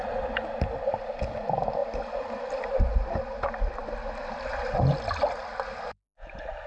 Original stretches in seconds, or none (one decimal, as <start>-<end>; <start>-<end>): 0.0-6.7